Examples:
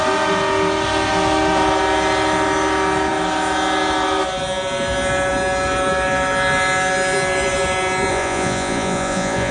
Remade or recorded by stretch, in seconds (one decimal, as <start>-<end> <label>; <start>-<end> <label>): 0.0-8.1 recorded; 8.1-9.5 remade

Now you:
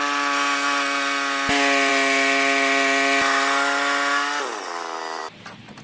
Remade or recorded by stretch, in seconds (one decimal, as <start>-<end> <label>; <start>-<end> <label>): 0.0-5.8 recorded

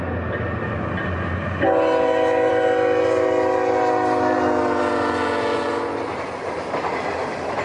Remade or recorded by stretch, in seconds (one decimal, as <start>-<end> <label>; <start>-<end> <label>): 0.0-7.6 recorded